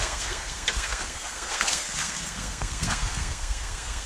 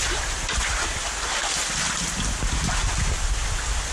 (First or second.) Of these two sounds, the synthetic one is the first